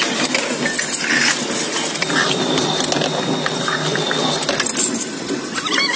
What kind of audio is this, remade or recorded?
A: recorded